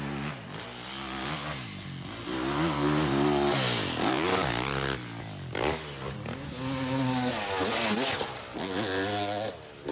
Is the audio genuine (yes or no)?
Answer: yes